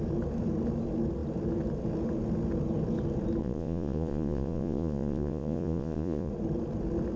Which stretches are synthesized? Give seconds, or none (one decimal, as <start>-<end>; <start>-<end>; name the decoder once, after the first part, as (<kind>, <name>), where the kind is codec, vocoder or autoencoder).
3.4-6.3 (vocoder, Vocos)